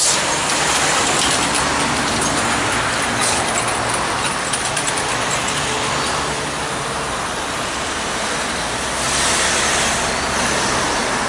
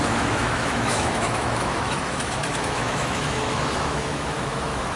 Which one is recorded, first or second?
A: first